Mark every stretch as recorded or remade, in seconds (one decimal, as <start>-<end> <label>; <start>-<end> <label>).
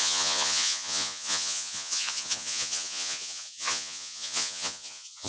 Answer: 0.0-5.3 remade